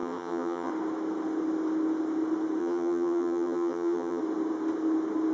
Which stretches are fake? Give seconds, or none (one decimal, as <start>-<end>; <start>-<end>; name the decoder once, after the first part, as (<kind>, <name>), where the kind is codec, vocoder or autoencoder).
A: 0.0-0.7 (vocoder, HiFi-GAN); 2.6-4.2